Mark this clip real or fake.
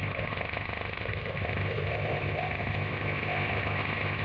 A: fake